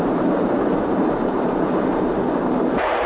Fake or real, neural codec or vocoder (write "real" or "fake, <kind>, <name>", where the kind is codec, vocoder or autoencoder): fake, vocoder, BigVGAN v2